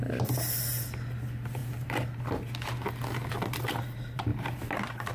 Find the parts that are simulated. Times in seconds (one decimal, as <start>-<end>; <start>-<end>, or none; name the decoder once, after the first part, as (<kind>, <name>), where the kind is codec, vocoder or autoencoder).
4.3-5.1 (vocoder, BigVGAN v2)